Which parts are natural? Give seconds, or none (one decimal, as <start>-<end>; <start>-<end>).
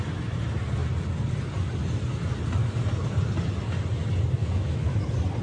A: 0.0-4.4; 5.0-5.4